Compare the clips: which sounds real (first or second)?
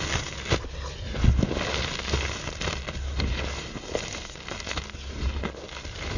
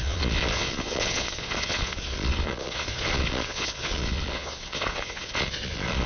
first